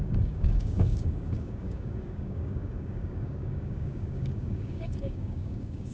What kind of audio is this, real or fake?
fake